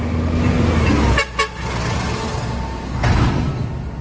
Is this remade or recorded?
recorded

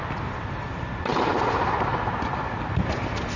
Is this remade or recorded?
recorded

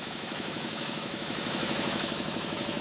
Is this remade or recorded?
remade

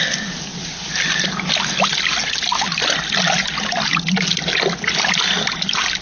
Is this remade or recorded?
recorded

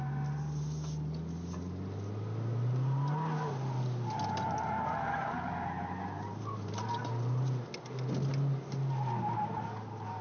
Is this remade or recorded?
recorded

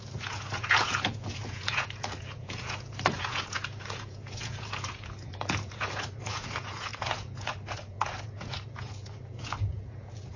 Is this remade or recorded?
remade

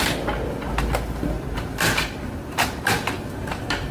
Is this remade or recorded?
recorded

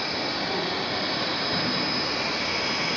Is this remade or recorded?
recorded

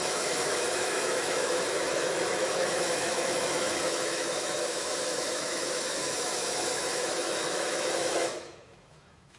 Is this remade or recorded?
remade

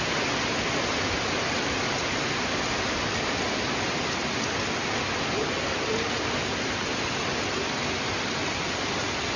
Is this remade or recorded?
recorded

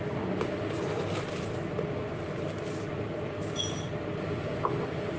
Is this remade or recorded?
recorded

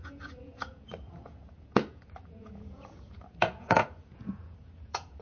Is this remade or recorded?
remade